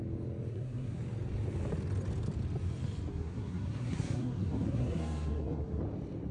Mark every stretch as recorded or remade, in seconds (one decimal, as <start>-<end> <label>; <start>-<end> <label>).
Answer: 0.0-0.5 recorded; 0.5-1.0 remade; 1.0-3.1 recorded; 3.1-5.8 remade; 5.8-6.3 recorded